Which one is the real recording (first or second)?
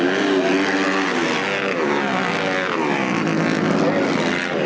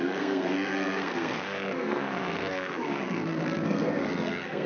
first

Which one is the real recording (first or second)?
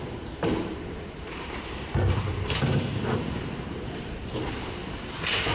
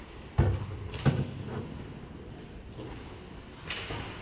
second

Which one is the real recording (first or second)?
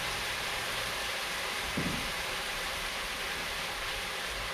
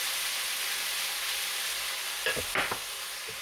second